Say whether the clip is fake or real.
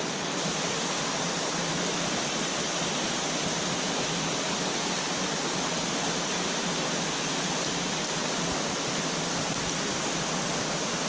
real